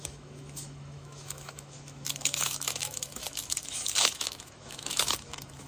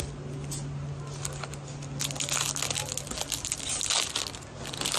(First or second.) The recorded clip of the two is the second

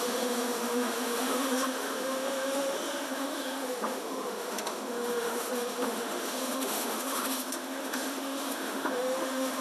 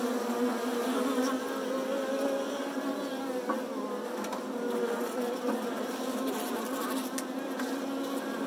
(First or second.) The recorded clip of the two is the second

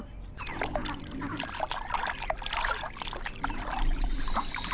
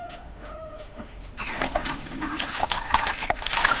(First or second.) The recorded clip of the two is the first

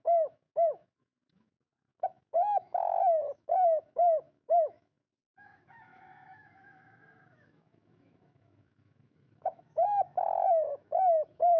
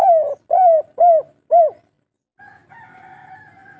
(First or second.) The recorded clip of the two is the second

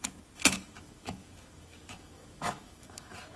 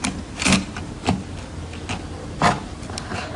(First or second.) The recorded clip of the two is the second